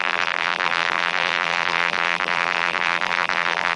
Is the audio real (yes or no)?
no